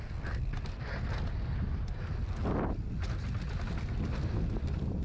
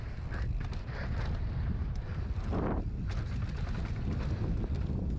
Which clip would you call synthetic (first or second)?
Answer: second